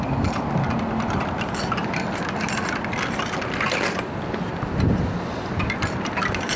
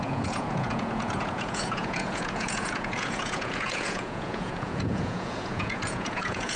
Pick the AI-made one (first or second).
second